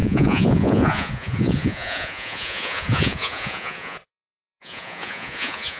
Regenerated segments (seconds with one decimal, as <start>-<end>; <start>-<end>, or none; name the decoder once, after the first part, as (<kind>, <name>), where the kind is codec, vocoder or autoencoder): 0.0-5.8 (vocoder, Vocos)